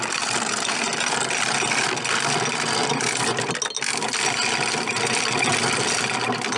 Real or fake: real